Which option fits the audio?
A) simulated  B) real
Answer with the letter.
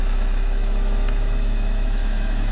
A